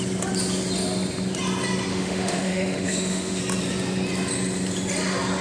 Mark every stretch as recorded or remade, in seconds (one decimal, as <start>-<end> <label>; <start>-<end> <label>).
0.0-1.9 recorded; 1.9-3.4 remade; 3.4-5.4 recorded